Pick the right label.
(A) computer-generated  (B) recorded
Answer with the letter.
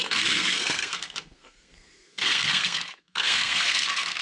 A